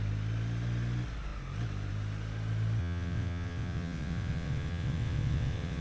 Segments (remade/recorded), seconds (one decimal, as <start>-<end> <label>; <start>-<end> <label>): 0.0-2.8 recorded; 2.8-5.8 remade